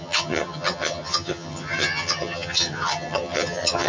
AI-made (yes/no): yes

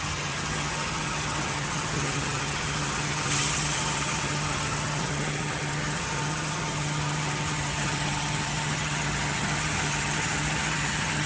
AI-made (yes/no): yes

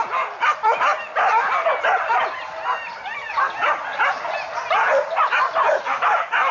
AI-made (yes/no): no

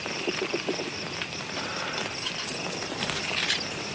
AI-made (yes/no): no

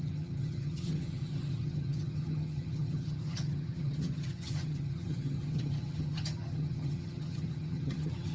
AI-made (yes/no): yes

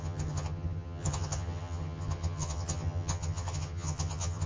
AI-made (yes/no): yes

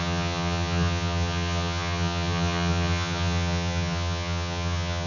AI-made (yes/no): yes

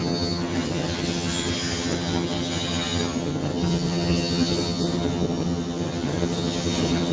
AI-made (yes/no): yes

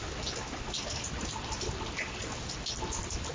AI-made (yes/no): no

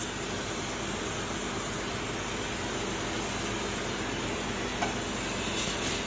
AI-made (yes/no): no